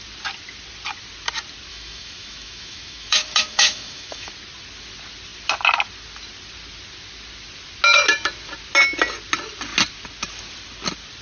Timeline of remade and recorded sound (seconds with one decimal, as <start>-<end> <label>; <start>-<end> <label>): 0.0-1.7 recorded; 1.7-4.3 remade; 4.3-11.2 recorded